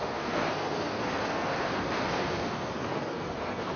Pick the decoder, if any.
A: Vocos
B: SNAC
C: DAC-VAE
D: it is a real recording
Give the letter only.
B